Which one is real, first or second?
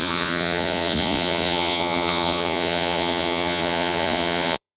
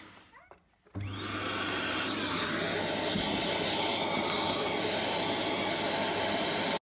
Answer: second